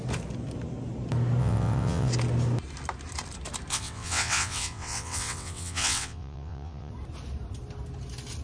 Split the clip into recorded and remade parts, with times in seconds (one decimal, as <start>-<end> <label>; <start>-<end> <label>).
0.0-1.4 recorded; 1.4-2.1 remade; 2.1-3.7 recorded; 3.7-6.9 remade; 6.9-8.4 recorded